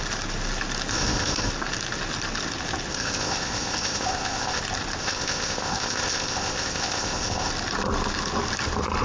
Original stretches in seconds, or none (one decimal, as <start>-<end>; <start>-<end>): 0.0-0.9; 1.5-2.9; 4.6-5.0; 7.5-9.0